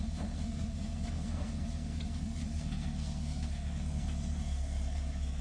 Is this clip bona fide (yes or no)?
no